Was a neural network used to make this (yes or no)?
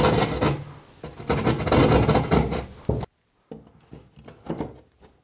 no